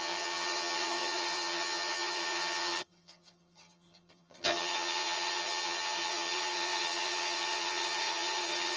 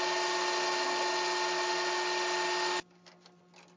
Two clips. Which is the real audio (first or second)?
second